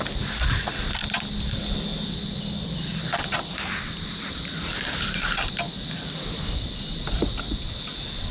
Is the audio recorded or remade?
recorded